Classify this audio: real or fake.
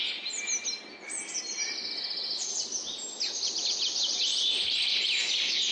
real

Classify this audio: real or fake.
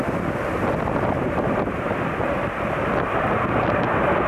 real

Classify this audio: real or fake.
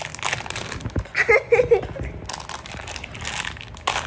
real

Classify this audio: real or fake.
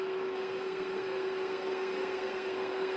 fake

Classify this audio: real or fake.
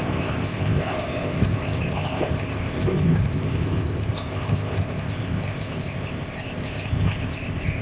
fake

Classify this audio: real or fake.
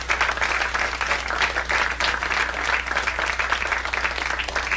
real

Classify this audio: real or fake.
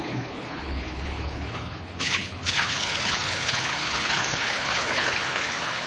fake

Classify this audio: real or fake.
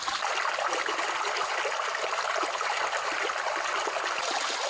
real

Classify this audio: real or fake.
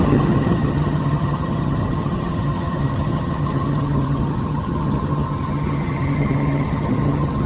fake